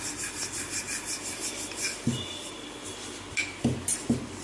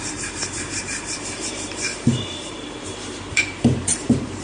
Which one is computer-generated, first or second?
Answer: second